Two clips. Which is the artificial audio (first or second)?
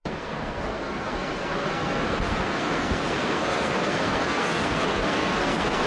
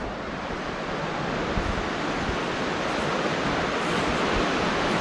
first